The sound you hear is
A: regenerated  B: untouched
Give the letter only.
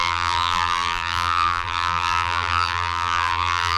A